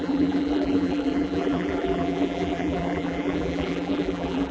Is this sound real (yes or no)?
no